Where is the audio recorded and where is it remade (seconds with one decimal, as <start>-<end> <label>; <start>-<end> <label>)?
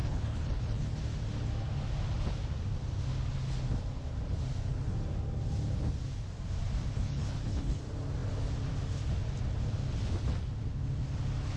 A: 0.0-1.0 remade; 1.0-6.9 recorded; 6.9-7.8 remade; 7.8-11.6 recorded